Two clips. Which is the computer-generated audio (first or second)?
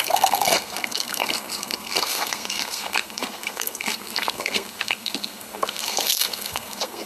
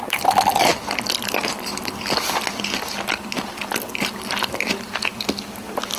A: first